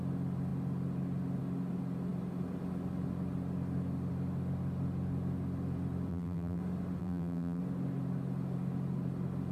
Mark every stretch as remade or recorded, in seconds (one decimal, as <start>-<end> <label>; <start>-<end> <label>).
0.0-6.1 recorded; 6.1-6.6 remade; 6.6-7.0 recorded; 7.0-7.6 remade; 7.6-9.5 recorded